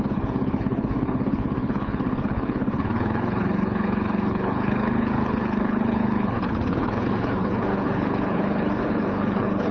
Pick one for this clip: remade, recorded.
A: remade